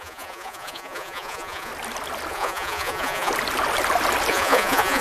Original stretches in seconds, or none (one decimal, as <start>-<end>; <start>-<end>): 1.7-2.3; 3.3-4.3